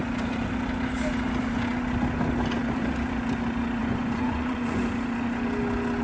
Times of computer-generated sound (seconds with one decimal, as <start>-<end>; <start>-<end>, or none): 3.8-4.8